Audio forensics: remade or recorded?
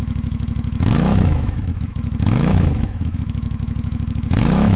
remade